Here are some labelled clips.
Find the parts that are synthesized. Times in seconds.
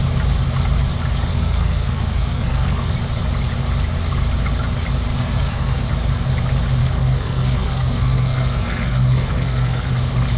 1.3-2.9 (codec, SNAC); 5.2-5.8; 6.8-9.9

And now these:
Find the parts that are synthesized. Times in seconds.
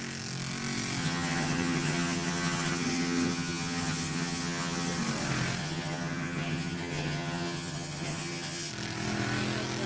1.0-5.0 (vocoder, HiFi-GAN); 5.6-8.7